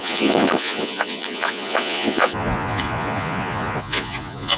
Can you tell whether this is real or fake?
fake